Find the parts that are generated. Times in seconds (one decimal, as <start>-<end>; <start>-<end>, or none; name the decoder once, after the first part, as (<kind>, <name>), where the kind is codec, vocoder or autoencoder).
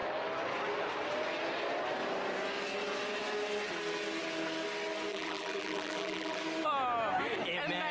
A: 5.1-6.4 (vocoder, BigVGAN v2)